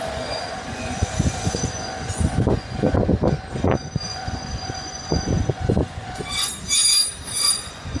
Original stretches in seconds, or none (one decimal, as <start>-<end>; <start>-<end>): 3.0-3.5; 6.5-7.4